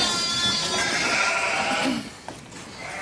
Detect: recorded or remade recorded